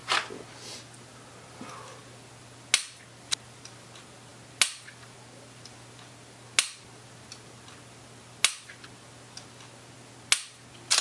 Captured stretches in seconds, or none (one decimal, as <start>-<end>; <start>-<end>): 0.0-11.0